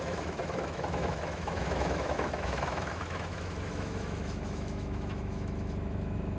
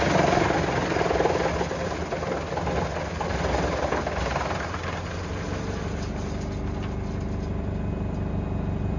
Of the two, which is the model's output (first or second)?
first